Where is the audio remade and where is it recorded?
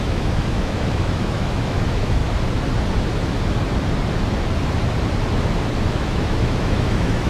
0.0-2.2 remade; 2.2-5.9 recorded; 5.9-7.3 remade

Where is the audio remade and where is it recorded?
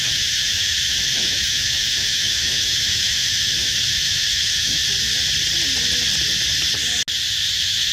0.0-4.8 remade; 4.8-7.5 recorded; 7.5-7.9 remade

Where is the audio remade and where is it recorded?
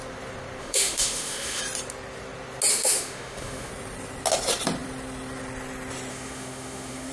0.0-0.6 recorded; 0.6-1.6 remade; 1.6-2.7 recorded; 2.7-3.7 remade; 3.7-6.1 recorded; 6.1-7.1 remade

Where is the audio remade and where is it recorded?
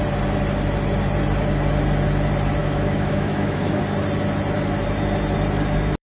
0.0-2.6 recorded; 2.6-3.8 remade; 3.8-6.1 recorded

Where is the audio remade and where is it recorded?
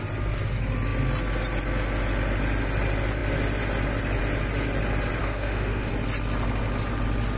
0.0-5.2 recorded; 5.2-5.9 remade; 5.9-7.4 recorded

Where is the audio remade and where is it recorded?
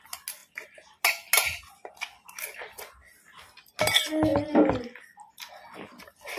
0.0-6.4 recorded